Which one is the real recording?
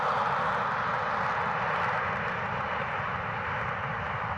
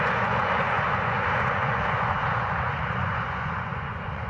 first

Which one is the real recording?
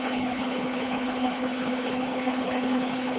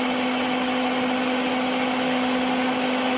second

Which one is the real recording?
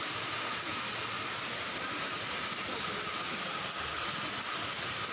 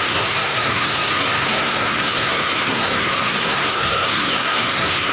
first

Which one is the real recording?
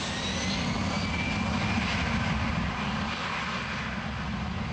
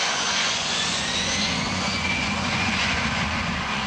first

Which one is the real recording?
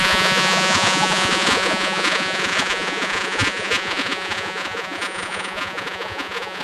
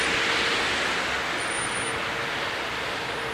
second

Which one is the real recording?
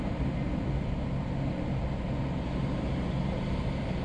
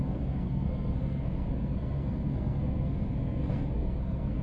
first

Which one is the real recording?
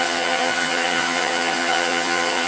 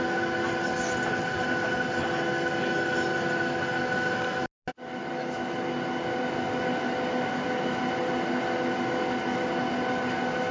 second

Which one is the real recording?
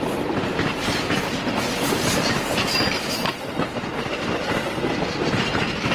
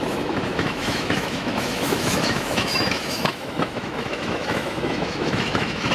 first